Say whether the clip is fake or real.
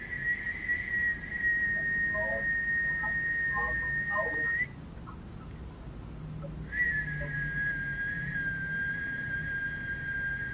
real